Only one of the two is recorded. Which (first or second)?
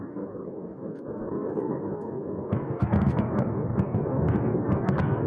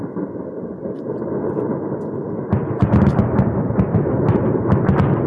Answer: second